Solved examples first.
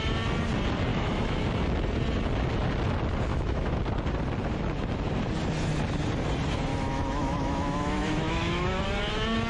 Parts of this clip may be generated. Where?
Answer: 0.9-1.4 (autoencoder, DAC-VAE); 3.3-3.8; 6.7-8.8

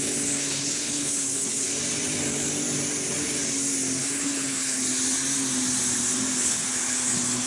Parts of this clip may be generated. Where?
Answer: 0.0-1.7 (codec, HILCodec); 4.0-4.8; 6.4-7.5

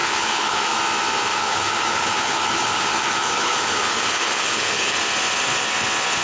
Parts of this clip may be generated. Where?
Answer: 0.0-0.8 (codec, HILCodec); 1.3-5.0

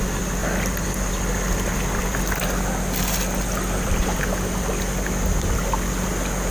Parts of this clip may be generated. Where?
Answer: none

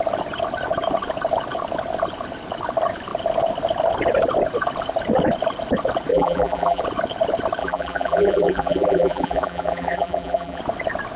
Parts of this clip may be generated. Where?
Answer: 6.1-6.8 (vocoder, BigVGAN v2); 7.6-10.6

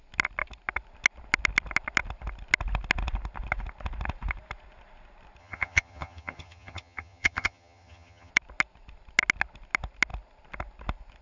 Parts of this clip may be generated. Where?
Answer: 5.4-8.3 (vocoder, HiFi-GAN)

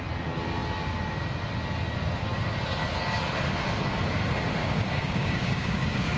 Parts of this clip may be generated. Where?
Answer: 4.6-6.2 (codec, DAC)

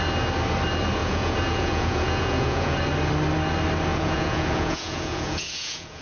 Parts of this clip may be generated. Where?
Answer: 1.0-2.8 (vocoder, Vocos); 3.9-6.0